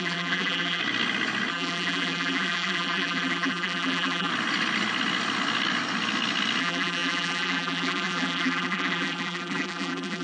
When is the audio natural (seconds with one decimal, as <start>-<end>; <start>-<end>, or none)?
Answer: 0.8-1.5; 4.3-6.6